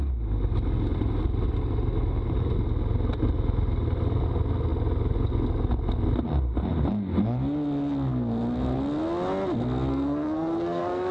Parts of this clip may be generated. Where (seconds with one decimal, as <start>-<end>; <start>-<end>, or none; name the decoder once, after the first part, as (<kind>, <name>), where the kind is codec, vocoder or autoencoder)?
9.9-11.1 (codec, SNAC)